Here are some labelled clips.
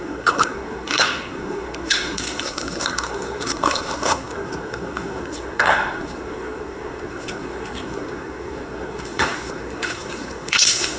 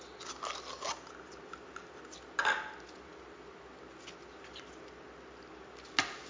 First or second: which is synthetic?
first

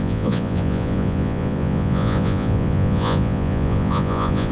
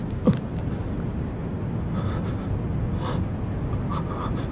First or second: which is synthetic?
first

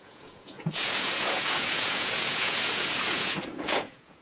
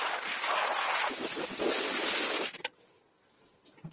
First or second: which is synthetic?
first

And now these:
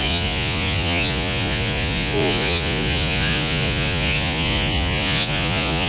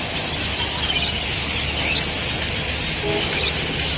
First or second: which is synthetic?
first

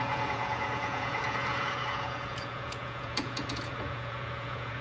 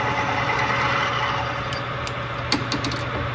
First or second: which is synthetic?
first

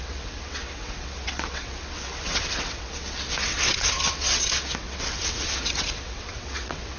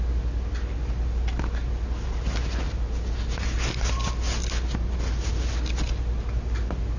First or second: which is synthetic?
first